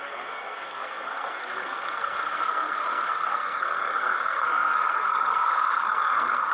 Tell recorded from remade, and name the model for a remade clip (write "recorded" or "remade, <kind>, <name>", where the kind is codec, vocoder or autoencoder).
remade, codec, SNAC